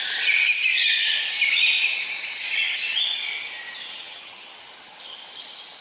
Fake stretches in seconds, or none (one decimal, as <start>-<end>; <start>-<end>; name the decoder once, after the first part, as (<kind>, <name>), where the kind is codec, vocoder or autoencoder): 3.8-4.5 (vocoder, HiFi-GAN)